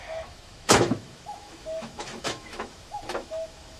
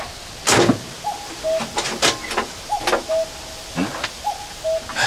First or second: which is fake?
first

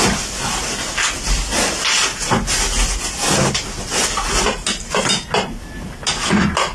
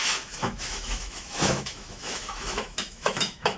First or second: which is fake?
second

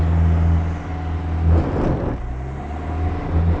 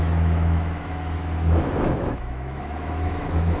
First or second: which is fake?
second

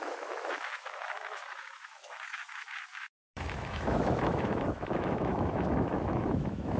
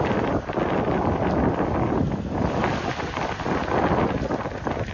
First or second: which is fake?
first